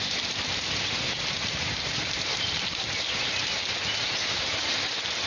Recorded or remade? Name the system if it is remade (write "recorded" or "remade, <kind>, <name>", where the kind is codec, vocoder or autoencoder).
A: remade, vocoder, BigVGAN v2